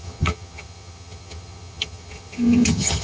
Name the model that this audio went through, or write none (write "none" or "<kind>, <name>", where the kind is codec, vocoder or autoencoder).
vocoder, HiFi-GAN